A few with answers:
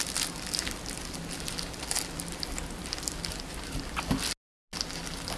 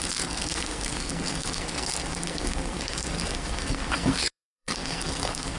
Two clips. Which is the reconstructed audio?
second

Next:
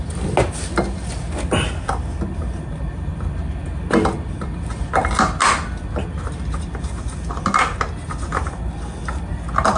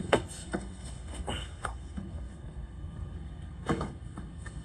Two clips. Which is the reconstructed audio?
second